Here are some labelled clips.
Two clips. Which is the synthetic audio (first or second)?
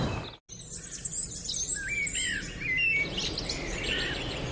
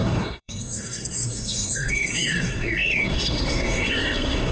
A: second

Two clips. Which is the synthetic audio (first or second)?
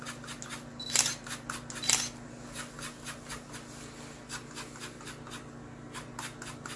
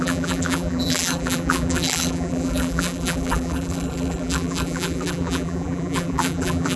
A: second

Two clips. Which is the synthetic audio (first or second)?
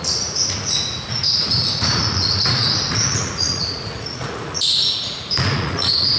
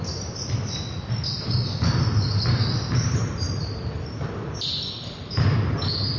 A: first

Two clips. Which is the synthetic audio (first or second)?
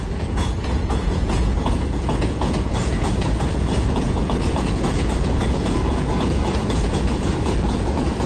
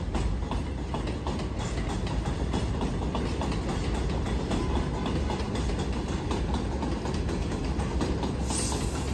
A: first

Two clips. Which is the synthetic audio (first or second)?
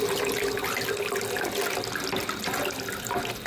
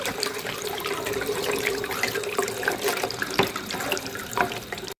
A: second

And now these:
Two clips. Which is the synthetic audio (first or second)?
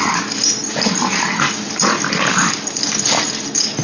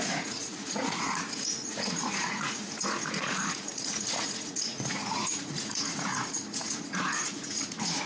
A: second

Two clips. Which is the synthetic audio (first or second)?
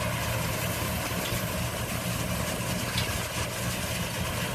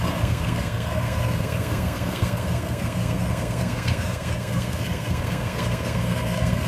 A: second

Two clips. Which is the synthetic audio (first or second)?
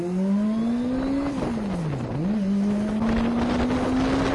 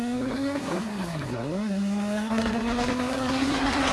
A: second